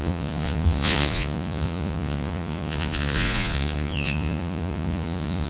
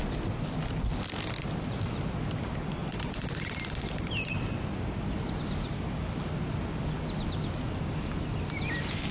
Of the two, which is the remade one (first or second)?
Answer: first